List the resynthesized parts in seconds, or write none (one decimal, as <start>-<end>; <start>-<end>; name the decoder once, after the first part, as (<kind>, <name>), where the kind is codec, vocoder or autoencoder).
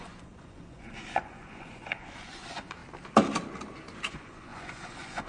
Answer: 0.0-2.8 (vocoder, Vocos); 4.1-5.3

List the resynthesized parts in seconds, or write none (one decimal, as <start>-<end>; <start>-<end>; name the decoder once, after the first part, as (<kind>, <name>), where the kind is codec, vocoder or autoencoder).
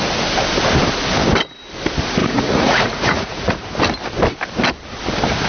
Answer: 2.2-3.5 (vocoder, Vocos)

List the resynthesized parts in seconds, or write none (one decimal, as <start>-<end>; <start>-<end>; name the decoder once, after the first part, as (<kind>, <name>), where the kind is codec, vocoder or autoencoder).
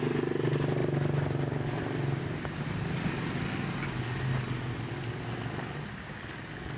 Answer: none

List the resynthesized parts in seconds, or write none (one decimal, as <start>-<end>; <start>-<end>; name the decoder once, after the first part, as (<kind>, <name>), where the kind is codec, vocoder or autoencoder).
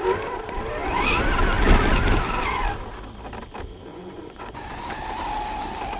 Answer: 3.9-4.8 (vocoder, Vocos)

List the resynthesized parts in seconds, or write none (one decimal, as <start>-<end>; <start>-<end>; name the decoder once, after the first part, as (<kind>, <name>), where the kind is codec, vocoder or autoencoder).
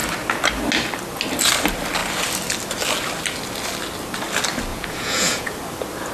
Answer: 4.7-5.5 (vocoder, Vocos)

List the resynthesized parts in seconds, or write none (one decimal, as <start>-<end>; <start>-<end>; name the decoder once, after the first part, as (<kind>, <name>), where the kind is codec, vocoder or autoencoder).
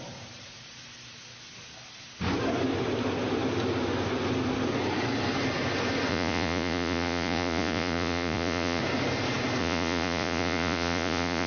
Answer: 6.1-8.8 (vocoder, Vocos); 9.6-11.5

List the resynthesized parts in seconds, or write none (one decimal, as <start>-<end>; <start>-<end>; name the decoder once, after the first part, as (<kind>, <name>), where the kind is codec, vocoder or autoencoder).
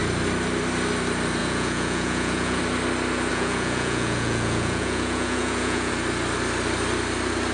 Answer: 1.4-2.6 (vocoder, Vocos); 3.3-5.9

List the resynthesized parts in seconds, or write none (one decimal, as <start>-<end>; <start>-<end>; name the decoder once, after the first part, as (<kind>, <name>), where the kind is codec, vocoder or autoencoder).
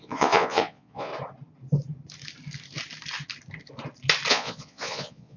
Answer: 0.0-1.1 (vocoder, Vocos); 4.3-5.4